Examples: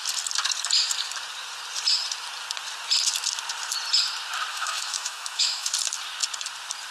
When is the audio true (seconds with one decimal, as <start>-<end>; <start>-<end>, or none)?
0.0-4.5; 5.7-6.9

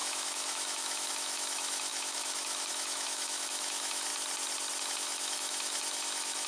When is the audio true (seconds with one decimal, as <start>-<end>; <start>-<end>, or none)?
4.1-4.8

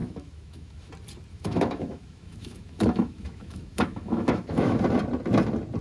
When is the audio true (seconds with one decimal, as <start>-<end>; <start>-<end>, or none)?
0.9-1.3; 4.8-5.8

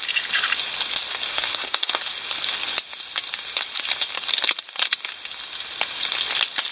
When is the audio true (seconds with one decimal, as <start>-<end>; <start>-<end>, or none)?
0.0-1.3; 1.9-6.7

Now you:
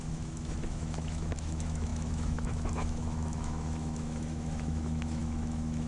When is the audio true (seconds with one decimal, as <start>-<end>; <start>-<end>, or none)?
none